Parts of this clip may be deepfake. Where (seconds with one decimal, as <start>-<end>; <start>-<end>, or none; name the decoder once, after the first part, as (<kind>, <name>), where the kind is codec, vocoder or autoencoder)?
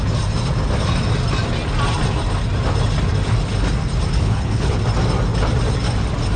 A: 4.1-4.8 (codec, HILCodec)